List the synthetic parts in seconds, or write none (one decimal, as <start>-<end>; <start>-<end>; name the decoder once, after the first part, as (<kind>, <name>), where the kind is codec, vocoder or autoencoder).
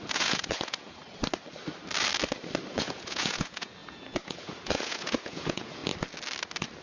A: 0.0-1.0 (vocoder, Vocos); 2.7-5.8